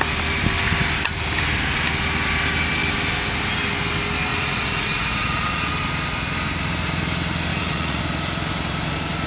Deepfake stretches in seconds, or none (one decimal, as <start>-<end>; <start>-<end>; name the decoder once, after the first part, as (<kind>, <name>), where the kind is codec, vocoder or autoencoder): 4.3-5.7 (vocoder, Vocos); 7.5-8.0

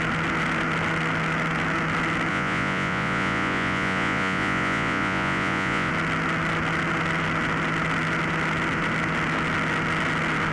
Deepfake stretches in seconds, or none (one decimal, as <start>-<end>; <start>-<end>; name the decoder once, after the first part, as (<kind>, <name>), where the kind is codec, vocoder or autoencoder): 2.3-5.9 (vocoder, Vocos)

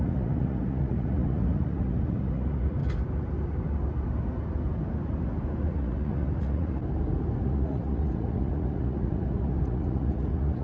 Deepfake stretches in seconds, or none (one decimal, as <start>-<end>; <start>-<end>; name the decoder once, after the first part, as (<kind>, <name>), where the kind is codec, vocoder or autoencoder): 0.0-2.8 (vocoder, Vocos); 5.6-6.8; 7.4-10.6